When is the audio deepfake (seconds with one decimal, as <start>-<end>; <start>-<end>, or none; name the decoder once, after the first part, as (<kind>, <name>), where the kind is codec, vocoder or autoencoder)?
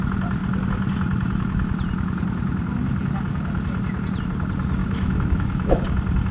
4.8-5.8 (autoencoder, DAC-VAE)